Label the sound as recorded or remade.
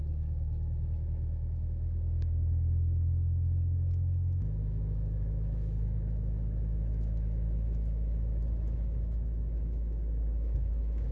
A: remade